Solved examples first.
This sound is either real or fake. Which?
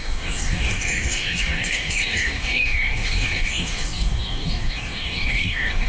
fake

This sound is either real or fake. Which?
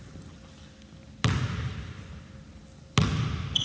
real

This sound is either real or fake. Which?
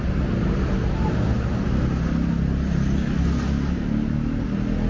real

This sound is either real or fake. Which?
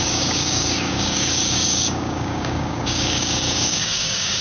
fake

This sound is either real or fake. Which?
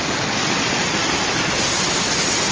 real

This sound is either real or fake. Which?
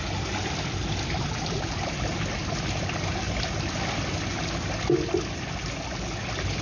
real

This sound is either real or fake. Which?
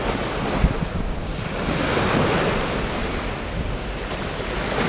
real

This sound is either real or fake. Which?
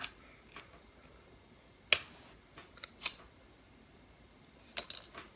real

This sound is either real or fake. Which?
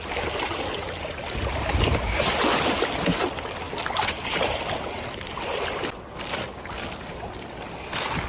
real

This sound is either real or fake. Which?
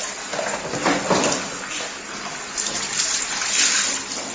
real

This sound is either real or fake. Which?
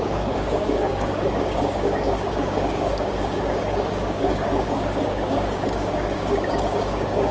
fake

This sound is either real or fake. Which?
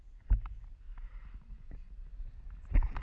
real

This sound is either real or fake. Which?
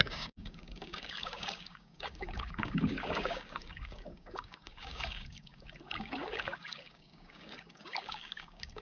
fake